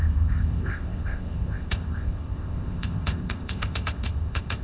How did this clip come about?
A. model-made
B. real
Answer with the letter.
A